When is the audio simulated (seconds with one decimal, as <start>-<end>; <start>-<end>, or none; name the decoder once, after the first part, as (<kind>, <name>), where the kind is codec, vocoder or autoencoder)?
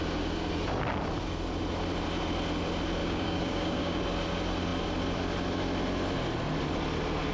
3.0-4.0 (codec, DAC)